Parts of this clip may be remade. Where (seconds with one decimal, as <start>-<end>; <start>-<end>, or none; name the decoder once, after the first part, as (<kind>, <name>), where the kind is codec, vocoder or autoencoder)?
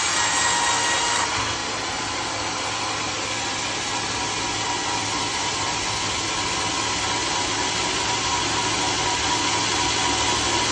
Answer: none